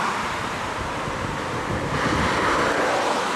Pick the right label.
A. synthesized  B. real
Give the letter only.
B